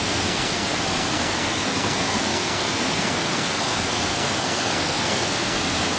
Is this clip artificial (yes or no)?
yes